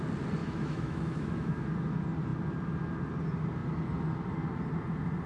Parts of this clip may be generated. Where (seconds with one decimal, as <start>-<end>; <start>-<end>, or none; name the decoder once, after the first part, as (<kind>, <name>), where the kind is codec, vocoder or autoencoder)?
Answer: 0.4-1.7 (autoencoder, DAC-VAE)